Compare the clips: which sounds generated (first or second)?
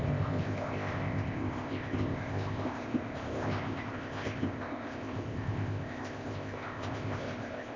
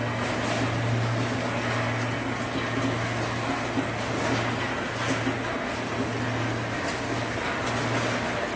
first